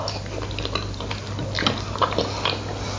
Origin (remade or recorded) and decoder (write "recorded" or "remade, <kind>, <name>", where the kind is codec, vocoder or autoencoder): recorded